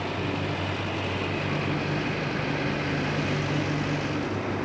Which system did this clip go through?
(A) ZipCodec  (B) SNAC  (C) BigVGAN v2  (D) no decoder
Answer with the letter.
D